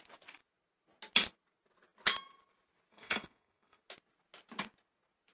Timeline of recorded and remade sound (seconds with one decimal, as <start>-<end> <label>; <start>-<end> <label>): 0.0-2.9 recorded; 2.9-3.8 remade; 3.8-5.3 recorded